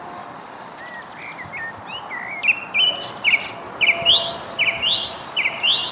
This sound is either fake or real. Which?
real